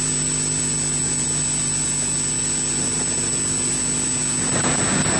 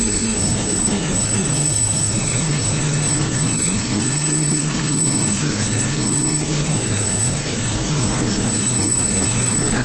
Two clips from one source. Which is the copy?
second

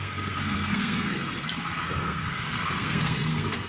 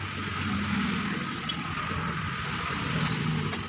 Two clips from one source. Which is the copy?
first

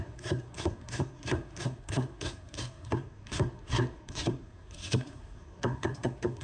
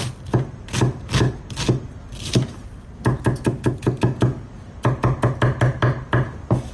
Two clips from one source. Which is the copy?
first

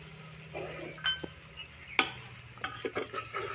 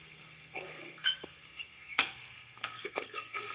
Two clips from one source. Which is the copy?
second